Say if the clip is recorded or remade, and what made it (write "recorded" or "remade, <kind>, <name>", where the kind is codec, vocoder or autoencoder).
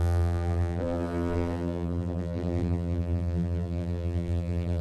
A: remade, vocoder, BigVGAN v2